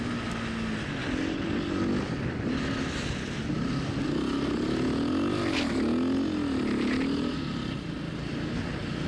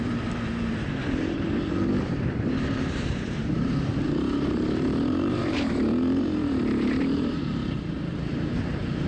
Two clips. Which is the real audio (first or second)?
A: first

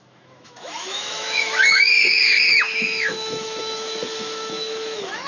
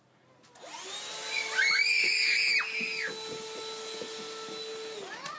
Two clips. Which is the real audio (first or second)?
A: second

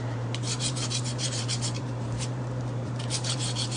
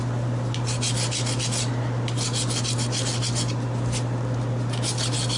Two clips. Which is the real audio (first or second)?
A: second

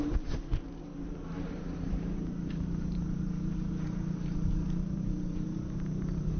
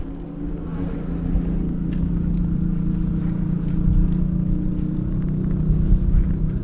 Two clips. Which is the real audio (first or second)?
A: second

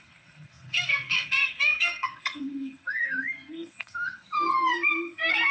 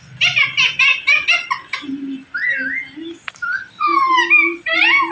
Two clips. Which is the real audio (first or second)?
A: second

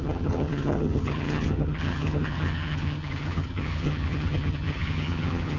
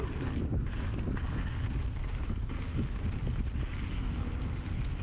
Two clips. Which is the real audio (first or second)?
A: second